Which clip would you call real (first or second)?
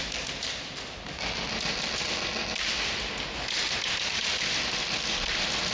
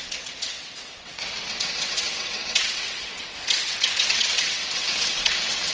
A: first